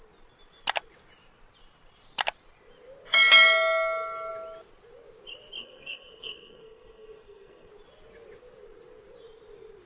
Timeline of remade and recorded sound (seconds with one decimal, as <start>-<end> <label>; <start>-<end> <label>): 0.0-5.6 recorded; 5.6-7.7 remade; 7.7-9.9 recorded